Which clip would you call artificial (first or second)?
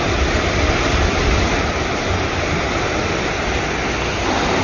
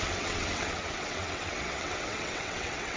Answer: second